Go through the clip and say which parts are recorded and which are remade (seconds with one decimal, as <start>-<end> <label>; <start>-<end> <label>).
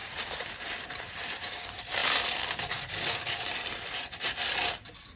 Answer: 0.0-2.0 remade; 2.0-5.2 recorded